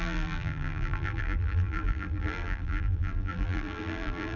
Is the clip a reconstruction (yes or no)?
yes